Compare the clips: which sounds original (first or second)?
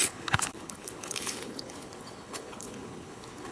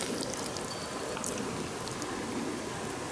second